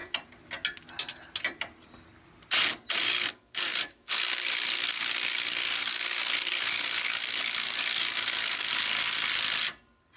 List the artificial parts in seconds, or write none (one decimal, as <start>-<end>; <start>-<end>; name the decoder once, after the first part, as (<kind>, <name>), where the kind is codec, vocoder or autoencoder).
2.9-8.7 (codec, DAC)